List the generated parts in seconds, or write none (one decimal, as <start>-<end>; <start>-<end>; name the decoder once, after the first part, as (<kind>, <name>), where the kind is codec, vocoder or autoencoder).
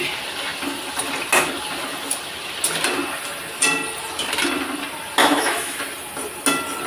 5.2-5.8 (autoencoder, DAC-VAE)